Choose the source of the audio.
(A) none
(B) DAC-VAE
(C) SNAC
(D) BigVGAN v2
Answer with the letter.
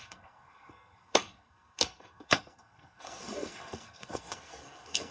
C